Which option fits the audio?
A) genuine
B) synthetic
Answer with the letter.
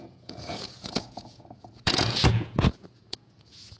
B